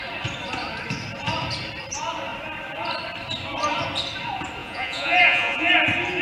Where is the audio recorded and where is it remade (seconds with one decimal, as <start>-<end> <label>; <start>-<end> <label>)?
0.0-4.6 recorded; 4.6-5.7 remade; 5.7-6.2 recorded